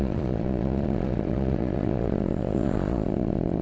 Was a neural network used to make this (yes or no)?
yes